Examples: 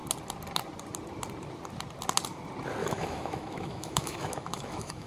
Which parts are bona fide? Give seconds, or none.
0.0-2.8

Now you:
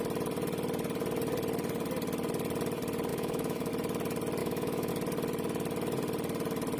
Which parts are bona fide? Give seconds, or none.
0.0-3.1; 3.7-4.4; 4.9-6.8